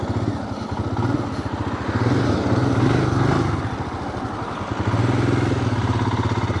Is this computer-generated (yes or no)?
no